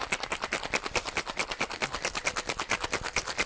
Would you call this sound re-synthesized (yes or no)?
no